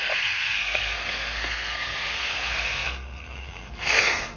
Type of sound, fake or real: fake